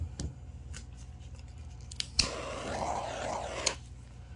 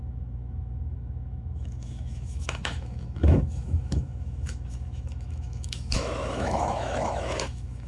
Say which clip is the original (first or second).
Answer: first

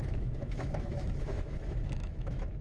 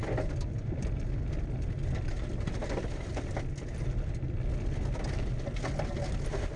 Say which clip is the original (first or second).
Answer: second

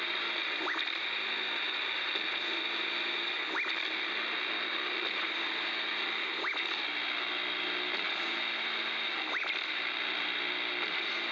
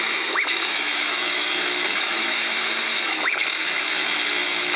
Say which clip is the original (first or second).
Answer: first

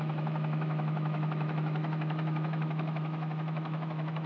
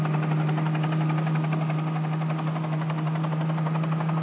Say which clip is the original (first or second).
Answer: second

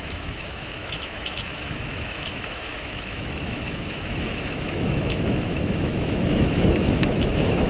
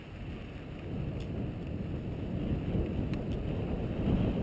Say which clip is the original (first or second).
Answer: second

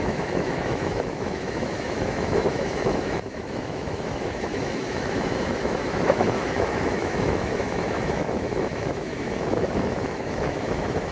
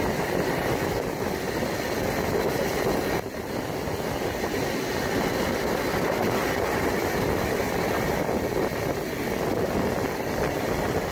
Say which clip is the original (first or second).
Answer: second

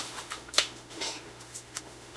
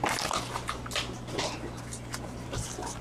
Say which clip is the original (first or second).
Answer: second